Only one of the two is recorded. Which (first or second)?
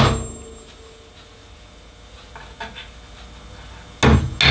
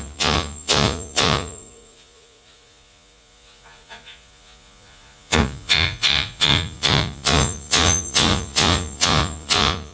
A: first